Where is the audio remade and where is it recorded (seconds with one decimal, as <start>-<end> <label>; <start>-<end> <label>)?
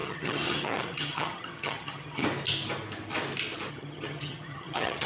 0.0-2.2 remade; 2.2-3.7 recorded; 3.7-5.1 remade